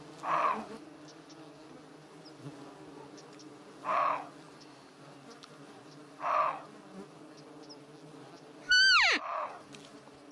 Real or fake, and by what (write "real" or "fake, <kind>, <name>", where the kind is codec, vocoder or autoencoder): real